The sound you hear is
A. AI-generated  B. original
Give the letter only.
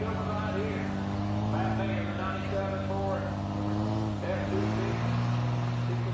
B